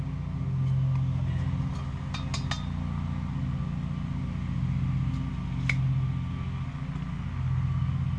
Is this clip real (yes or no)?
yes